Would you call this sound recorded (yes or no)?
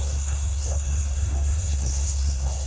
no